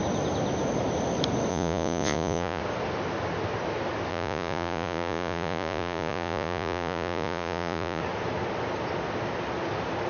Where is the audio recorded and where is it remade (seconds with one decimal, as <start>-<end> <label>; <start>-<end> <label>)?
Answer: 0.0-1.5 recorded; 1.5-2.6 remade; 2.6-4.1 recorded; 4.1-8.0 remade; 8.0-10.1 recorded